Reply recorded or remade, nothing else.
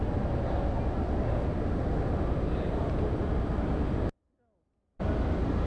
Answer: recorded